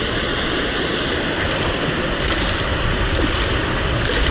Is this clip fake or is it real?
real